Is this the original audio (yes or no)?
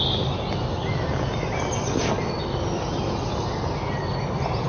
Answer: yes